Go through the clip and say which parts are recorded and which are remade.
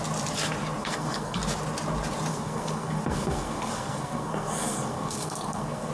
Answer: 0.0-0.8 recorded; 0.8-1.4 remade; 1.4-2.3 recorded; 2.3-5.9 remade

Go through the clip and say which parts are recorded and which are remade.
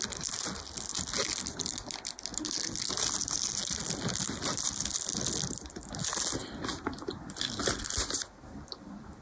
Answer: 0.0-9.2 recorded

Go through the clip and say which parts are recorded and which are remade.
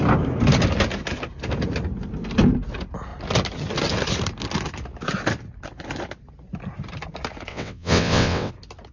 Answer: 0.0-7.5 recorded; 7.5-8.5 remade; 8.5-8.9 recorded